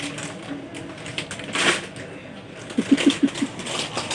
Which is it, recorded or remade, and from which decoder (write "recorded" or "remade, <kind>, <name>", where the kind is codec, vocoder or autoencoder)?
recorded